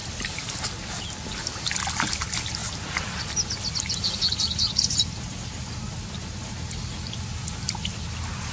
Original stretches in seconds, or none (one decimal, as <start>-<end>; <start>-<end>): 0.0-8.5